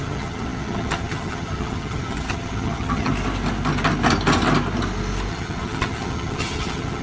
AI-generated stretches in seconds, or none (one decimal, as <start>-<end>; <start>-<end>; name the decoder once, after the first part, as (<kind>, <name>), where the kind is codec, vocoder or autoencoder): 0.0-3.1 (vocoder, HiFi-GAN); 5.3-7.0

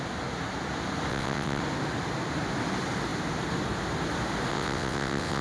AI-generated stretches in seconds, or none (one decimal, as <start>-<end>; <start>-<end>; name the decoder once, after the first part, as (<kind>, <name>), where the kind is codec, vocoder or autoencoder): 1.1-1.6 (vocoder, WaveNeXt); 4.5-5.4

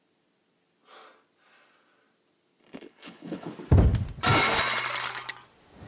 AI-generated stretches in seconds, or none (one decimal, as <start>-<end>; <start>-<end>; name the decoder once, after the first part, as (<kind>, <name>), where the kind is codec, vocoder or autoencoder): 2.6-3.5 (codec, HILCodec)